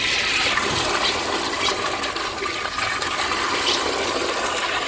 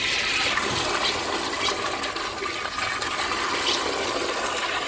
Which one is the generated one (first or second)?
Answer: first